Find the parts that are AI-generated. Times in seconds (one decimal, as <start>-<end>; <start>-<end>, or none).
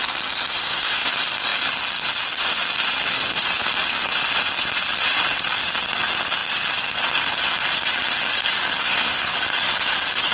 0.6-1.1; 8.8-9.3